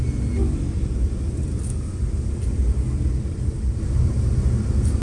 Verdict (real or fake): real